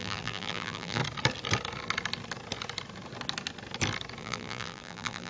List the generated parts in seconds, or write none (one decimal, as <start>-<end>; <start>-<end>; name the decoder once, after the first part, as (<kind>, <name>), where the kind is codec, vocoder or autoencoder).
0.0-1.0 (vocoder, BigVGAN v2); 4.2-5.3